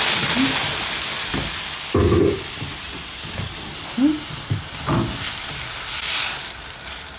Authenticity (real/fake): real